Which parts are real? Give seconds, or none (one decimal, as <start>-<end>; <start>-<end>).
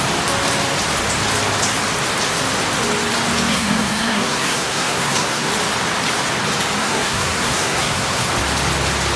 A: 0.0-3.5; 5.5-6.8; 8.3-9.2